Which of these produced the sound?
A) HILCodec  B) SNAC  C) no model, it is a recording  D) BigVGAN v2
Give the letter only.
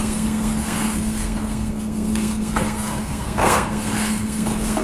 B